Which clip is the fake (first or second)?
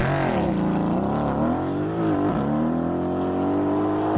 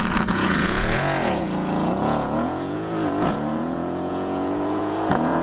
second